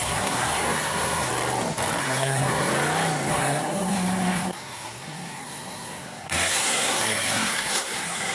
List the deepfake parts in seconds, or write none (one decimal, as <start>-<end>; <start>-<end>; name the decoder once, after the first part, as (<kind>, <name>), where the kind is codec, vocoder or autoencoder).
0.0-1.3 (codec, SNAC); 2.0-2.7; 3.3-8.3